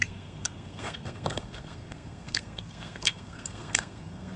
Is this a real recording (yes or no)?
no